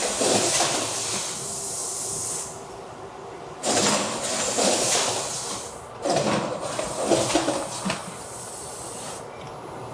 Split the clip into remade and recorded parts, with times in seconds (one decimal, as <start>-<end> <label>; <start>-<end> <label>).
0.0-9.9 recorded